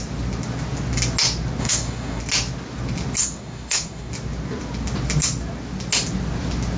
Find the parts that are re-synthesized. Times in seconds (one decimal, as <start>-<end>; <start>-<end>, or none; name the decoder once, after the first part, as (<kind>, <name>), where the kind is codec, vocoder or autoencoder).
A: 1.6-2.2 (codec, SNAC); 3.2-4.1